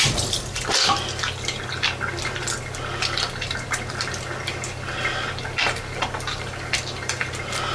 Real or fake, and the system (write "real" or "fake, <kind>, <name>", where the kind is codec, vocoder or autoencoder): fake, vocoder, BigVGAN v2